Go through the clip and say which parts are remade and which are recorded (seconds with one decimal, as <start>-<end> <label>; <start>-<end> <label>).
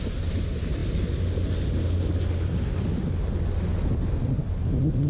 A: 0.0-5.1 recorded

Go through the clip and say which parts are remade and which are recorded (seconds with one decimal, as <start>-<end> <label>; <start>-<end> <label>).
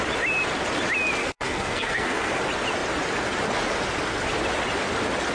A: 0.0-1.2 recorded; 1.2-2.3 remade; 2.3-5.3 recorded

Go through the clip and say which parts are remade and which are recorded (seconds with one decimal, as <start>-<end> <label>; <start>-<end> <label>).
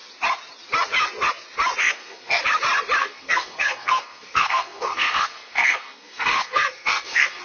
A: 0.0-1.8 recorded; 1.8-2.4 remade; 2.4-3.0 recorded; 3.0-7.4 remade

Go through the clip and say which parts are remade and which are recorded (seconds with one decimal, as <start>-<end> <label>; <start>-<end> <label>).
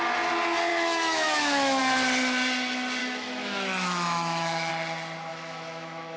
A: 0.0-0.7 recorded; 0.7-1.8 remade; 1.8-3.0 recorded; 3.0-4.7 remade; 4.7-5.3 recorded; 5.3-6.2 remade